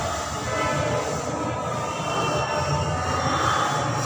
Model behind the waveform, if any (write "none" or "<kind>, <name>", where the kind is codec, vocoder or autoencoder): none